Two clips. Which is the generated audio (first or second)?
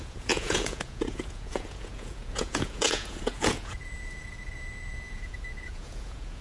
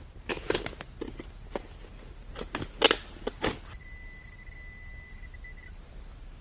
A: first